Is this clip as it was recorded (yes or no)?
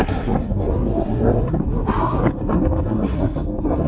no